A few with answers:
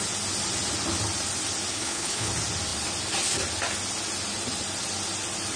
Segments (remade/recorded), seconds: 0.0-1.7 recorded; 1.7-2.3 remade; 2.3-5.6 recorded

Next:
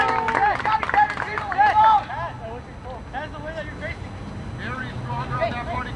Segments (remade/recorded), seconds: 0.0-6.0 recorded

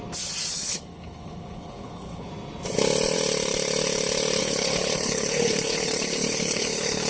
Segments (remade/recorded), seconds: 0.0-0.5 recorded; 0.5-2.3 remade; 2.3-4.4 recorded; 4.4-7.1 remade

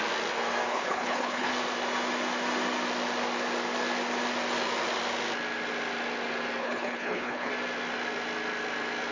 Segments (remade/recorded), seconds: 0.0-0.7 recorded; 0.7-1.5 remade; 1.5-6.6 recorded; 6.6-7.5 remade; 7.5-9.1 recorded